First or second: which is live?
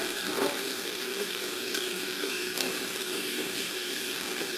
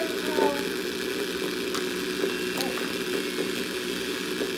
second